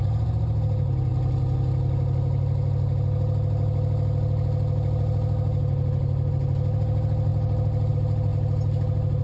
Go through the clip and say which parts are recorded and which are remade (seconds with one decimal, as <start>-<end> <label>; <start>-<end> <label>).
0.0-9.2 recorded